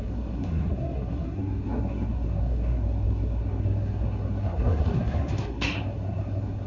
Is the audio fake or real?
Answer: fake